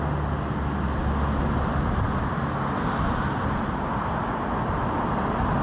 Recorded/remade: recorded